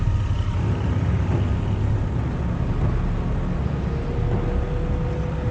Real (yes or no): yes